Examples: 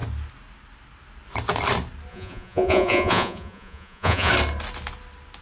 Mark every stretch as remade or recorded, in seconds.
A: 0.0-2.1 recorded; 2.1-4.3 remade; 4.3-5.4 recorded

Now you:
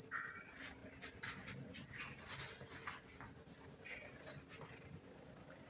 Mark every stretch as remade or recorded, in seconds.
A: 0.0-5.7 recorded